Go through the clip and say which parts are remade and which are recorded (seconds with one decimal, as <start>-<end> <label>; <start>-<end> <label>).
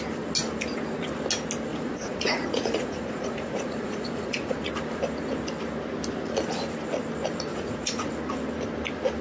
0.0-1.7 recorded; 1.7-4.7 remade; 4.7-7.5 recorded; 7.5-8.1 remade; 8.1-9.2 recorded